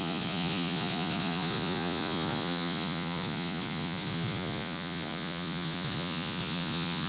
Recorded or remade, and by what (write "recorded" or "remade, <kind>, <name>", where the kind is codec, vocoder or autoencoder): remade, vocoder, Vocos